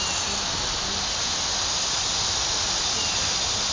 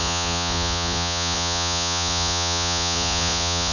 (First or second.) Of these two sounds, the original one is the first